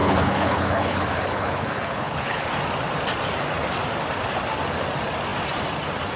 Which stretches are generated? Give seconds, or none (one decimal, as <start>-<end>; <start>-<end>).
0.0-2.5